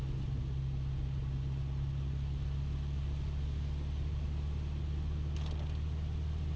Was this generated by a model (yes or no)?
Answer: no